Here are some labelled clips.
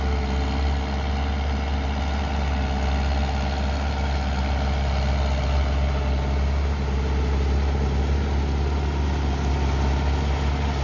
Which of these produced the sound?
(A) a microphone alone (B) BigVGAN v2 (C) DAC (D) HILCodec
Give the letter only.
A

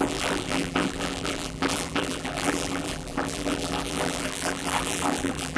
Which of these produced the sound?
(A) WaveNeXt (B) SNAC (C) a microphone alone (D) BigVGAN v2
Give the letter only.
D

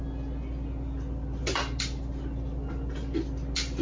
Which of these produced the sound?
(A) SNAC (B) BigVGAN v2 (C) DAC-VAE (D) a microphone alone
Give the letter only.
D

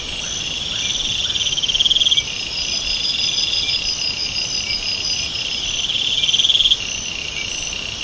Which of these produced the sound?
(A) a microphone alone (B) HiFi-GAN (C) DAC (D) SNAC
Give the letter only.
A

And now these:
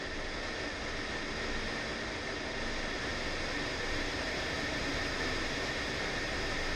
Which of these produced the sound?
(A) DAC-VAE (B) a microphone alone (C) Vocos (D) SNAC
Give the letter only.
B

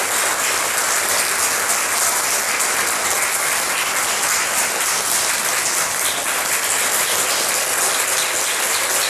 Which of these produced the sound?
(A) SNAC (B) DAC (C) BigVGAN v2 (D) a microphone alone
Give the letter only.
D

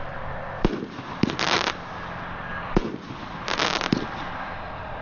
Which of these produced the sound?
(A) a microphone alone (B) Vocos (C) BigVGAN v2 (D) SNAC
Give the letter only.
A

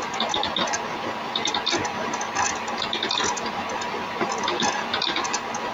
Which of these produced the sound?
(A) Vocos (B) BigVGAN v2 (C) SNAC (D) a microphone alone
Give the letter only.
D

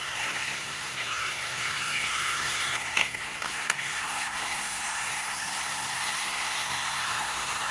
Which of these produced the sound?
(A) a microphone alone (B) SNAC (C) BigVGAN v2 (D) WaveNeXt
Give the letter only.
B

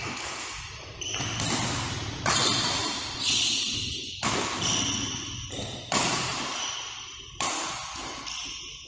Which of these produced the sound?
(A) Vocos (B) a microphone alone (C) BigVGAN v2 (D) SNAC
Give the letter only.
C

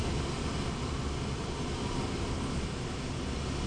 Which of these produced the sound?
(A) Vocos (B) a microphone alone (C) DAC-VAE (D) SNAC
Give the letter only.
B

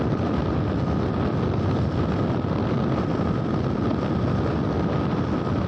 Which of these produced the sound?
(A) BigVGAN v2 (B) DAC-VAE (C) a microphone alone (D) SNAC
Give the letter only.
C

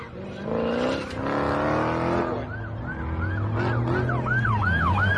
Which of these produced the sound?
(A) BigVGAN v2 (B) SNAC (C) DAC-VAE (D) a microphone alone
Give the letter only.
D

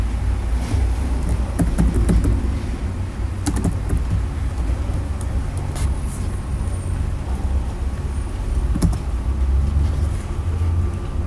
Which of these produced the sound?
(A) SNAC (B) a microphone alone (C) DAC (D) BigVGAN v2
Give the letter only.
B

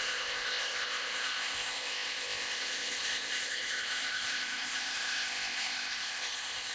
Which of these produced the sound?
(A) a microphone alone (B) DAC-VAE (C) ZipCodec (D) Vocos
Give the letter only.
C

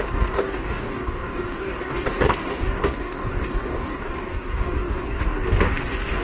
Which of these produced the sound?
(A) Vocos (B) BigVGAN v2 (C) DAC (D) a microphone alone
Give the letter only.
C